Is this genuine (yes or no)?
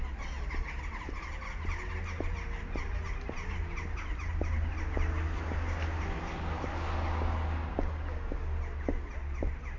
yes